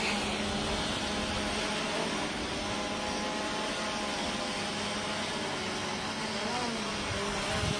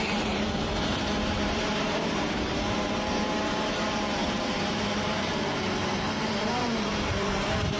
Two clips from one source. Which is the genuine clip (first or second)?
first